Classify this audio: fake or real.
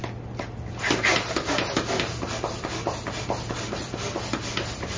fake